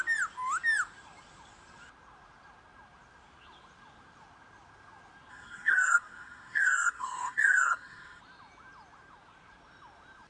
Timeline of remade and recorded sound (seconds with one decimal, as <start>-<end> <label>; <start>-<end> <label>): 0.0-5.3 recorded; 5.3-8.2 remade; 8.2-10.3 recorded